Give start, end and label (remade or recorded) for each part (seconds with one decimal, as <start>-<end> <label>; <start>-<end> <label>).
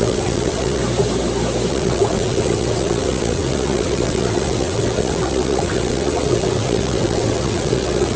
0.0-0.8 remade; 0.8-1.7 recorded; 1.7-8.2 remade